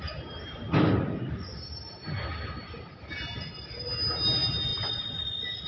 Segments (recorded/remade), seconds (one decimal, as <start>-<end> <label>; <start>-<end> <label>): 0.0-5.7 recorded